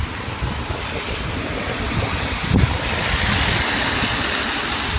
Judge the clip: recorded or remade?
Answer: recorded